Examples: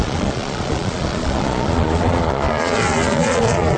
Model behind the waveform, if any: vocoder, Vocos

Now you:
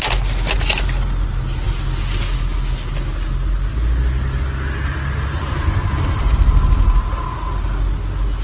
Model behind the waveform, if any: none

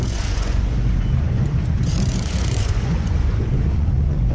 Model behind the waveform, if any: vocoder, Vocos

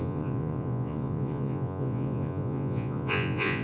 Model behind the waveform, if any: vocoder, Vocos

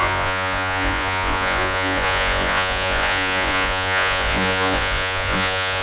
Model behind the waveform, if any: vocoder, Vocos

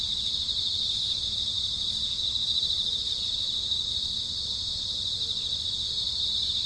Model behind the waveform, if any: none